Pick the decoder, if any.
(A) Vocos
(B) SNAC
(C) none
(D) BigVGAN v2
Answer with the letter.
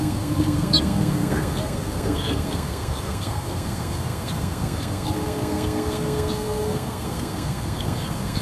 B